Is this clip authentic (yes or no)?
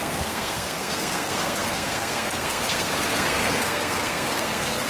no